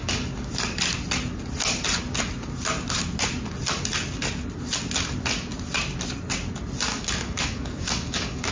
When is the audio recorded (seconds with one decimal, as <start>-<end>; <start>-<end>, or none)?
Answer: 0.5-6.9